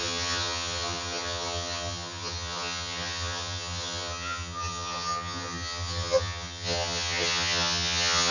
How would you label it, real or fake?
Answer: fake